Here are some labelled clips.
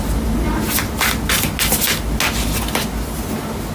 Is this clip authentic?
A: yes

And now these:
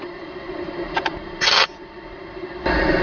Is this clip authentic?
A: yes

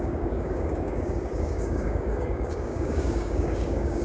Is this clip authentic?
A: no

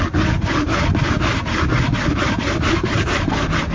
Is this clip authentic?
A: yes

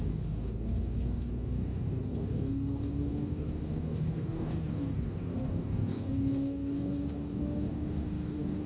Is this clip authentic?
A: no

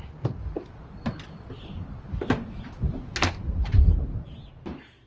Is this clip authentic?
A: yes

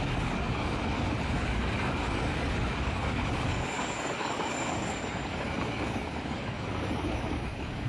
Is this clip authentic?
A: no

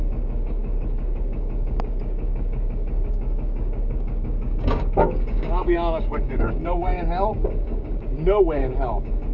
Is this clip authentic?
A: no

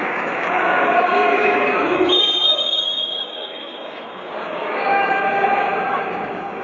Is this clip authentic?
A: no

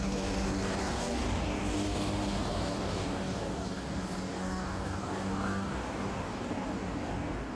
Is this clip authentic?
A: no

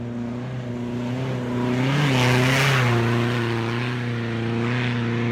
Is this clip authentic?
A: yes